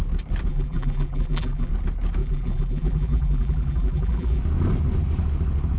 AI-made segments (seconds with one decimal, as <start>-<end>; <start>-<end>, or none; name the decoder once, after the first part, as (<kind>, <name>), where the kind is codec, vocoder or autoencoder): 0.5-1.7 (vocoder, BigVGAN v2); 2.2-4.4